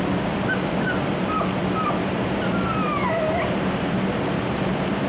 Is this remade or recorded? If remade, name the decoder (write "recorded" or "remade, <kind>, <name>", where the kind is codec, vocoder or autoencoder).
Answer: recorded